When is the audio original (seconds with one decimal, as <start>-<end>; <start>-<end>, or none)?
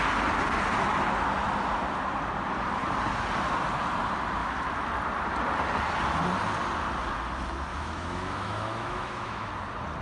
0.0-4.4; 4.9-7.7; 9.5-10.0